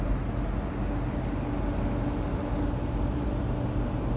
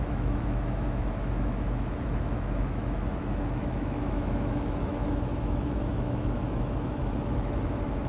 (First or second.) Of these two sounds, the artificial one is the second